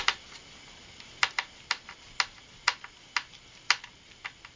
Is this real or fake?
real